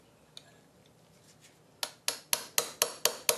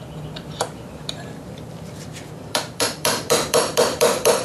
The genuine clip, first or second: first